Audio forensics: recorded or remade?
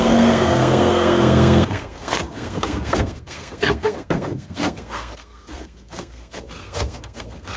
remade